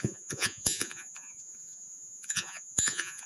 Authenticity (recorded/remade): remade